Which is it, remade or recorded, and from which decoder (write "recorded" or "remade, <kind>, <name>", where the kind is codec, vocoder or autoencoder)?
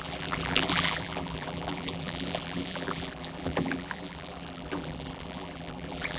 remade, vocoder, BigVGAN v2